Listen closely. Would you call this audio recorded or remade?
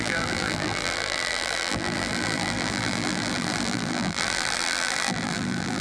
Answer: remade